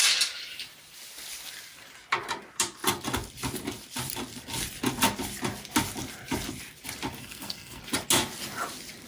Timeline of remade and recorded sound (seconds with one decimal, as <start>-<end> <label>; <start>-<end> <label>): 0.0-7.2 recorded; 7.2-7.8 remade; 7.8-9.1 recorded